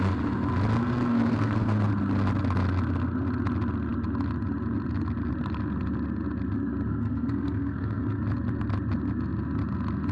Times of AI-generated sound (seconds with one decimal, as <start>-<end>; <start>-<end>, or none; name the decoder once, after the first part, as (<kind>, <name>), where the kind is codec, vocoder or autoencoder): 0.8-1.9 (codec, SNAC); 6.9-8.2